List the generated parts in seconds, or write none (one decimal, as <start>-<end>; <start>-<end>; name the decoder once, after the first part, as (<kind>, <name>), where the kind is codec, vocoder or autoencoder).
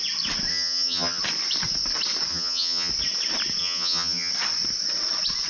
0.5-1.2 (vocoder, HiFi-GAN); 2.3-2.9; 3.6-4.3